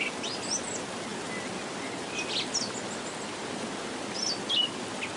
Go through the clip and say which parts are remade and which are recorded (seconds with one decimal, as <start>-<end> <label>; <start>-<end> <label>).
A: 0.0-5.2 recorded